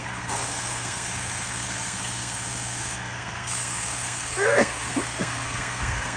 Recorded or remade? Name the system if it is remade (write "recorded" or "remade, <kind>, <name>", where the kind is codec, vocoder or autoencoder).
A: remade, codec, SNAC